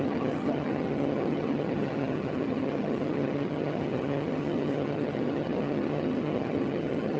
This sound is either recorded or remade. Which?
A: remade